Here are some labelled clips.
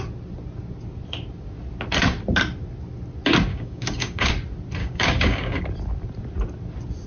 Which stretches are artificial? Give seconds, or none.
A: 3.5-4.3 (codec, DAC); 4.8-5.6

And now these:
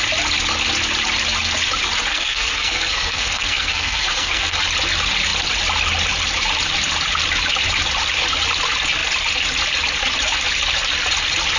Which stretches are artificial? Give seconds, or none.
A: 2.1-4.6 (codec, SNAC)

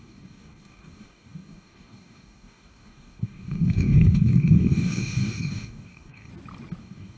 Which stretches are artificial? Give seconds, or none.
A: 0.0-6.3 (codec, DAC); 6.8-7.2

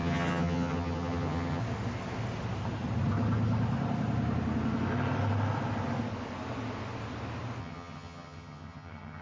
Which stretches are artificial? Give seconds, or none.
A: 0.0-1.6 (vocoder, HiFi-GAN); 7.6-9.2

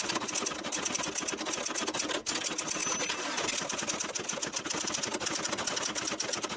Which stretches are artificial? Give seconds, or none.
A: none

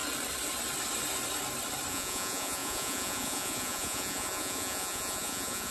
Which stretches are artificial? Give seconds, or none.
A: 1.9-5.7 (vocoder, Vocos)

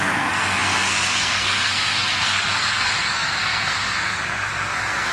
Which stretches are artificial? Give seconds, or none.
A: 0.0-5.1 (codec, SNAC)

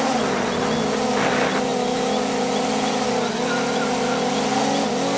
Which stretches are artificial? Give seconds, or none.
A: none